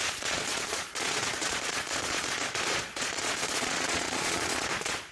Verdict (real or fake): fake